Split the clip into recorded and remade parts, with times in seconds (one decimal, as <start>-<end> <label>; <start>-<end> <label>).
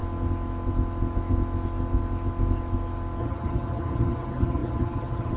0.0-3.2 recorded; 3.2-5.4 remade